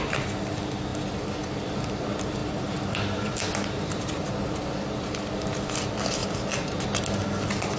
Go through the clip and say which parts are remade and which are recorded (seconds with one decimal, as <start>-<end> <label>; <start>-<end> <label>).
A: 0.0-2.4 recorded; 2.4-5.1 remade; 5.1-7.8 recorded